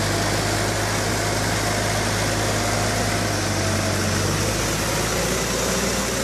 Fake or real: real